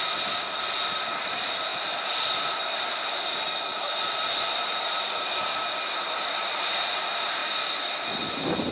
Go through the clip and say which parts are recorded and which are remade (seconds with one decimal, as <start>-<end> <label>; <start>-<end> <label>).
0.0-7.4 remade; 7.4-8.2 recorded; 8.2-8.7 remade